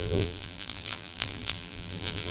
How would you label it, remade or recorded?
remade